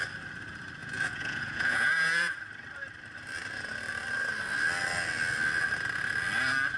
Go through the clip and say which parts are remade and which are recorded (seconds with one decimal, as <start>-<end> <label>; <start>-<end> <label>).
0.0-0.8 recorded; 0.8-2.3 remade; 2.3-6.8 recorded